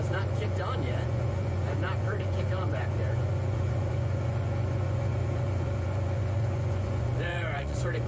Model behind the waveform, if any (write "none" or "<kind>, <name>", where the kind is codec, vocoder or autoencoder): vocoder, Vocos